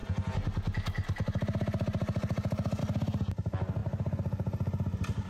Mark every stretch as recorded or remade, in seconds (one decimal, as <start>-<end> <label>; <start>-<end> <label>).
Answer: 0.0-5.3 recorded

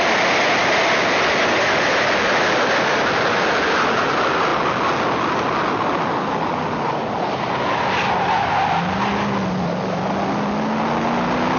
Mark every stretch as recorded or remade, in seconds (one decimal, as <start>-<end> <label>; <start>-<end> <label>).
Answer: 0.0-11.6 recorded

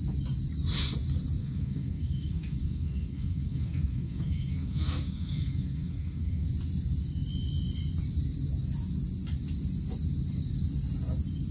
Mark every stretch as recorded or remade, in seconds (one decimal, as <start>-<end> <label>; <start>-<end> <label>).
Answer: 0.0-1.4 recorded; 1.4-6.5 remade; 6.5-11.5 recorded

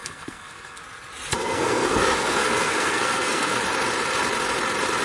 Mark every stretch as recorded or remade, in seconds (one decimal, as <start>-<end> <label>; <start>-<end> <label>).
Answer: 0.0-0.8 remade; 0.8-1.3 recorded; 1.3-3.6 remade; 3.6-5.0 recorded

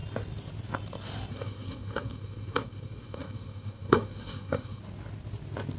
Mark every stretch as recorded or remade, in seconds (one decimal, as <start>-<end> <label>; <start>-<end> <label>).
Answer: 0.0-1.3 recorded; 1.3-4.8 remade; 4.8-5.8 recorded

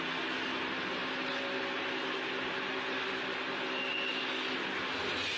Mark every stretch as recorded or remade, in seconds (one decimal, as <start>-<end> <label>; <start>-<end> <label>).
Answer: 0.0-5.4 recorded